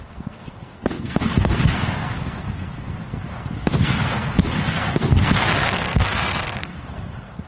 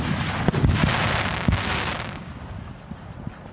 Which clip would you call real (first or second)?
second